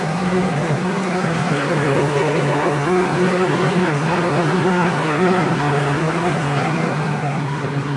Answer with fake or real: fake